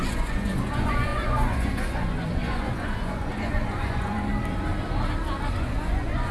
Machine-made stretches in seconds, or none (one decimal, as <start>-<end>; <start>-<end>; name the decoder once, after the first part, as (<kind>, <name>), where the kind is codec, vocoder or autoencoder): 0.0-4.3 (vocoder, Vocos); 5.5-6.3